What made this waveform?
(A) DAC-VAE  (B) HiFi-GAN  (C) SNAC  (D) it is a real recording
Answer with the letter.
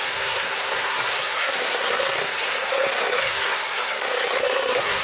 C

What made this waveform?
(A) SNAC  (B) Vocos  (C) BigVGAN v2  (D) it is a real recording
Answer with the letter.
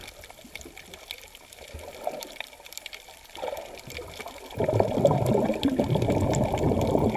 D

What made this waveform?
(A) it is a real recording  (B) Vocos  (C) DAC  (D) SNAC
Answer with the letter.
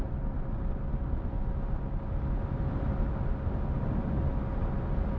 A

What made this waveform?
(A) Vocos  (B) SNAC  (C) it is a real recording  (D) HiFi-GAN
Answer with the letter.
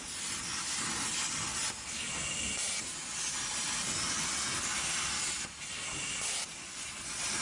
C